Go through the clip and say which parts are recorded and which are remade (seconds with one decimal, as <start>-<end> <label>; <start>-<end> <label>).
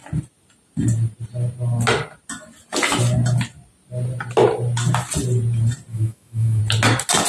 0.0-5.9 recorded; 5.9-6.6 remade; 6.6-7.3 recorded